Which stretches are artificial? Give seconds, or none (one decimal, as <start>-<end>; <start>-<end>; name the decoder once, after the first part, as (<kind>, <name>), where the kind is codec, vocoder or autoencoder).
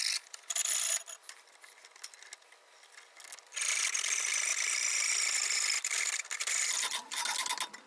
0.6-2.1 (vocoder, BigVGAN v2); 4.5-6.7